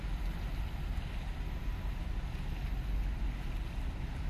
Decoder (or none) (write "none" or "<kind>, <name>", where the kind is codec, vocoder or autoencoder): none